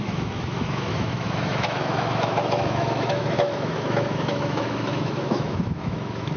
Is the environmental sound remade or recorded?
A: remade